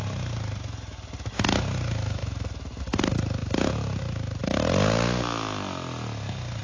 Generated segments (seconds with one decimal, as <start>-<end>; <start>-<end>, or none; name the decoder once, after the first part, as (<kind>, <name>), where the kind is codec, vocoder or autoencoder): none

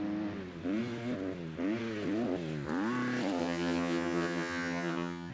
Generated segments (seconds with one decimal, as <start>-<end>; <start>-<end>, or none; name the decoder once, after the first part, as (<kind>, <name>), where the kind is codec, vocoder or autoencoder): 3.4-5.3 (vocoder, HiFi-GAN)

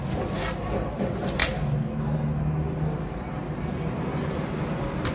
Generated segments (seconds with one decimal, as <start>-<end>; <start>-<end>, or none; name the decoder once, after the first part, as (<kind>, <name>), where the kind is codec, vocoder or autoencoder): none

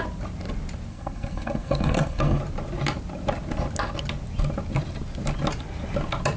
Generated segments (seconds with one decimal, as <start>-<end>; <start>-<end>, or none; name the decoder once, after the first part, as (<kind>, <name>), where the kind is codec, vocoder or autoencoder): 0.9-2.4 (codec, SNAC)

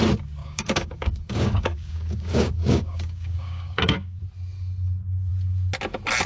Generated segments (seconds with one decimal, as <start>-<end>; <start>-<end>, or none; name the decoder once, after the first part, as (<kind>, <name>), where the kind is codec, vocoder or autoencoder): 0.4-4.2 (codec, DAC)